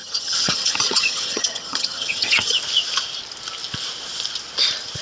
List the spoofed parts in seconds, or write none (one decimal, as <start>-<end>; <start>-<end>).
0.0-2.6

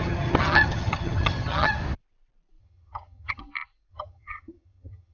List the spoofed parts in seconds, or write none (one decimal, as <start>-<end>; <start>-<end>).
0.0-1.8; 2.6-3.4; 3.9-5.1

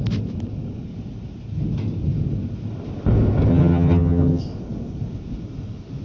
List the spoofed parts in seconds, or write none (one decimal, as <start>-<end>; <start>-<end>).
3.5-4.4

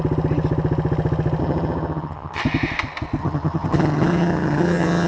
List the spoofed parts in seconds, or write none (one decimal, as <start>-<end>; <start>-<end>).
1.4-2.4; 3.2-5.1

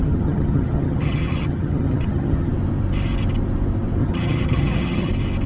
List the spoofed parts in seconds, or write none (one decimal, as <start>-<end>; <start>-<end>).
0.0-2.5; 4.0-5.1

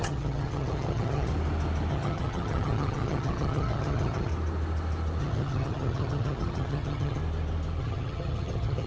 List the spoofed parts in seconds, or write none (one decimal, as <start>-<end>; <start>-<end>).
0.0-1.3; 1.9-4.3; 5.2-7.2; 7.8-8.9

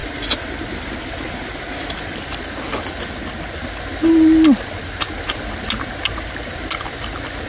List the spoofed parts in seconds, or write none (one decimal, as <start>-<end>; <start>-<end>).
none